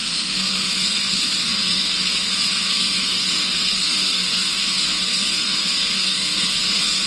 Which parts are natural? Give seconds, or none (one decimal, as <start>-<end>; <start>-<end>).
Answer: none